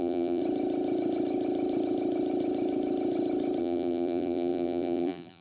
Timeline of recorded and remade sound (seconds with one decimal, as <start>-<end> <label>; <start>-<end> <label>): 0.0-0.4 remade; 0.4-3.6 recorded; 3.6-5.4 remade